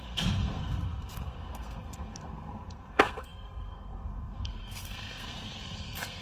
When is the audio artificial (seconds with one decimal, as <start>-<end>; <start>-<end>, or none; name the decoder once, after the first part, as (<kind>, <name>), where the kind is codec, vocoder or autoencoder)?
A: 0.0-6.2 (codec, SNAC)